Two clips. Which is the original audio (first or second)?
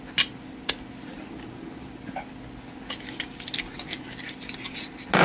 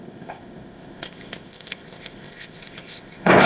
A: first